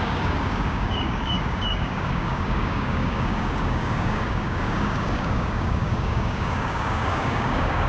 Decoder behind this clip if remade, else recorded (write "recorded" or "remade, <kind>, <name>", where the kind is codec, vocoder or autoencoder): remade, codec, DAC